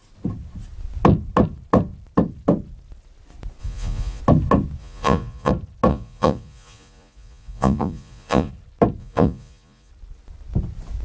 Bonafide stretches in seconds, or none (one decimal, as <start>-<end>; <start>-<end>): 0.0-3.6; 4.2-4.8; 5.5-5.9; 8.5-9.0; 9.9-11.0